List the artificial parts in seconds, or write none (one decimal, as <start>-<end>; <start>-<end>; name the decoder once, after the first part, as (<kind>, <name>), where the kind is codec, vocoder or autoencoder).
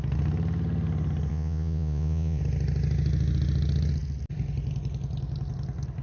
1.3-2.4 (vocoder, Vocos)